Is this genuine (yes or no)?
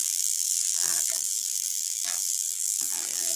no